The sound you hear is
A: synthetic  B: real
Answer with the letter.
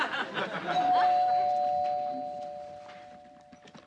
B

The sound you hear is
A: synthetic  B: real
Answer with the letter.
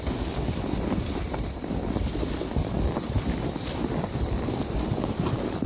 A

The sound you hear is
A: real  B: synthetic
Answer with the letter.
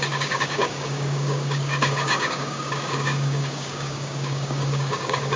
B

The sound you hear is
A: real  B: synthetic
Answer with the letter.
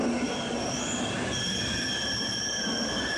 A